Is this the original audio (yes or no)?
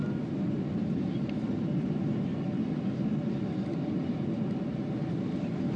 yes